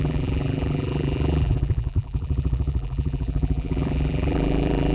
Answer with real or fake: fake